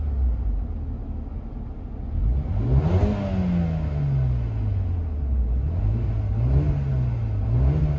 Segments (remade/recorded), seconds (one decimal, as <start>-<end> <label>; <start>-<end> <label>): 0.0-8.0 recorded